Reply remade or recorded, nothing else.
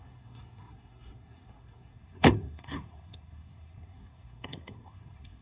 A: remade